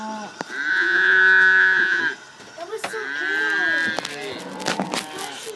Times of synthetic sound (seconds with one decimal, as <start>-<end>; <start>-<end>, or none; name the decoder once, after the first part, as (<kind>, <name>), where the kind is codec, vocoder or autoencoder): 0.7-2.0 (vocoder, Vocos)